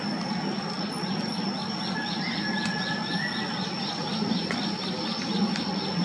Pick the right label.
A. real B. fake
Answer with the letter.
A